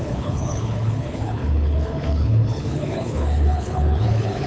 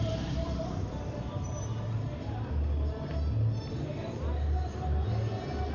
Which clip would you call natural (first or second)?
second